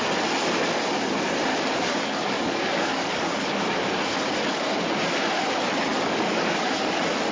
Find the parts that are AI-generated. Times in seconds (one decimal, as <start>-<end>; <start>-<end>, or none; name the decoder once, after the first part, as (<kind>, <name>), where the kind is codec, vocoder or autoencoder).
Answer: 1.5-3.7 (codec, DAC); 5.9-7.3